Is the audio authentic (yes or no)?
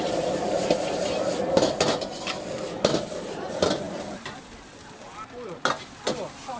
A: yes